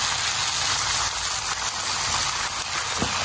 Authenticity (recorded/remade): recorded